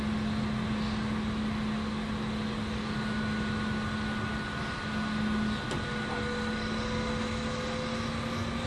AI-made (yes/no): no